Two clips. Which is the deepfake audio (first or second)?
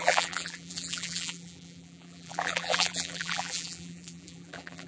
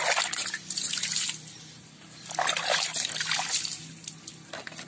first